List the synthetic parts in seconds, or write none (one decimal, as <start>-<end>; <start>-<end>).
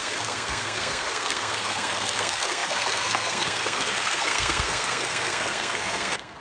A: 0.0-6.4